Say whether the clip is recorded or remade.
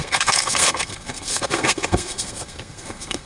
remade